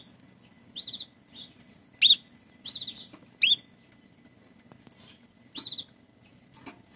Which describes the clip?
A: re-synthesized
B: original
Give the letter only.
B